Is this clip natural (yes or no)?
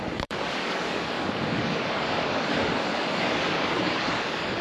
no